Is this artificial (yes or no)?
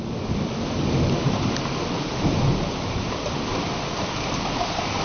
no